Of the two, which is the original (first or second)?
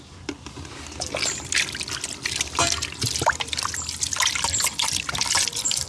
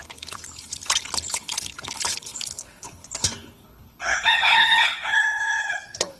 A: first